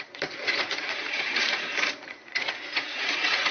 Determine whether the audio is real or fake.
fake